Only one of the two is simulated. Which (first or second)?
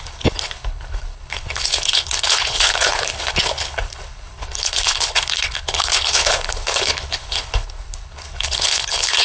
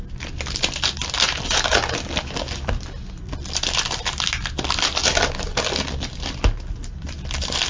first